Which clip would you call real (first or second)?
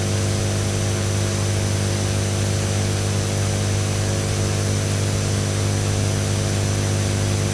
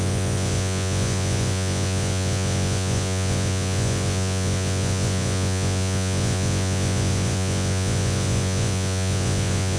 first